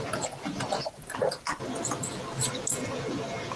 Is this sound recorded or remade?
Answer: recorded